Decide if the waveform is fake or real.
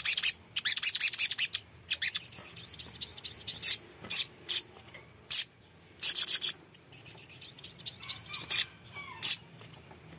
real